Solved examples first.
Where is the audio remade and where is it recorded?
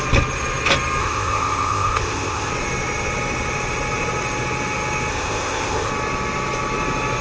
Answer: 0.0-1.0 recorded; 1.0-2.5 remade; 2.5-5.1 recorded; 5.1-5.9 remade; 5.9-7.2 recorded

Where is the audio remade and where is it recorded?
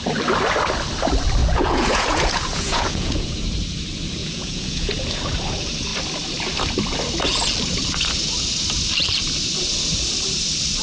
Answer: 0.0-1.4 recorded; 1.4-3.3 remade; 3.3-4.2 recorded; 4.2-4.9 remade; 4.9-10.8 recorded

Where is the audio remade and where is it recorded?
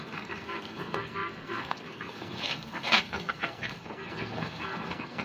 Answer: 0.0-5.2 remade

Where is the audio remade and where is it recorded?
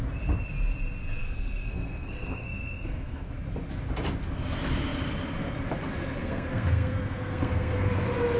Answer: 0.0-1.2 recorded; 1.2-3.3 remade; 3.3-6.2 recorded; 6.2-7.9 remade; 7.9-8.4 recorded